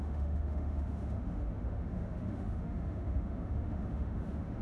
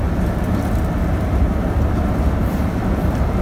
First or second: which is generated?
first